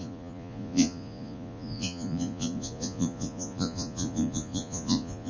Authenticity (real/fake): fake